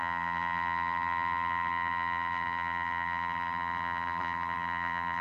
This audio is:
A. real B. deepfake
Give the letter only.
B